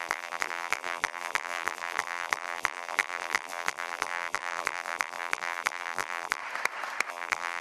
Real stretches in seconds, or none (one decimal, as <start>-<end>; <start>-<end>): 6.4-7.1